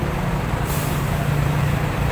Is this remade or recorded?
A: remade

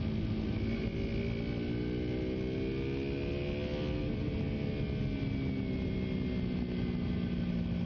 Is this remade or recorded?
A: recorded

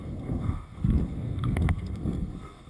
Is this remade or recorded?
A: remade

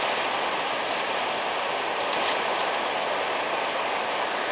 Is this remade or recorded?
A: recorded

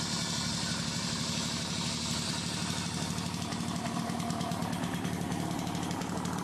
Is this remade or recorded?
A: recorded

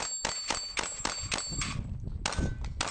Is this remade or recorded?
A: recorded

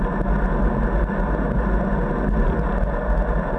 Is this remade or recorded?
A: recorded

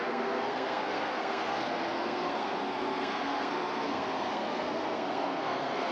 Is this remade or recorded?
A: remade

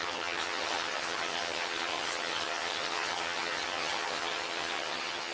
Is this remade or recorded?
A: remade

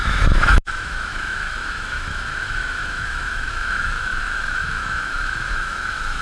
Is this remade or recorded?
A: remade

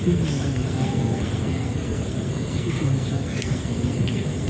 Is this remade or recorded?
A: remade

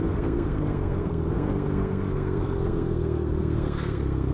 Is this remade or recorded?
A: remade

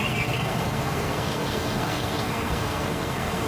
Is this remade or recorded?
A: remade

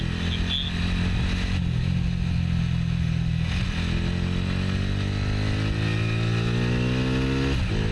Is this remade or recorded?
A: recorded